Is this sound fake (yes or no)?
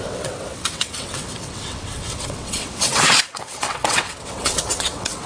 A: yes